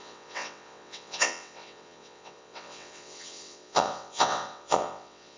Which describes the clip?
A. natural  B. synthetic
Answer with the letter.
B